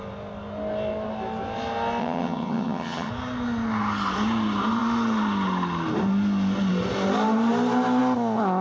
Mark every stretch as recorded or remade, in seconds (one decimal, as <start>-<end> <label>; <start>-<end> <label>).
0.0-2.0 recorded; 2.0-3.1 remade; 3.1-8.6 recorded